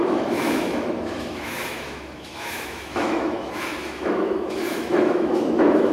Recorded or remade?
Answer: remade